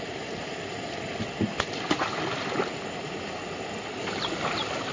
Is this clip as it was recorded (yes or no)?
yes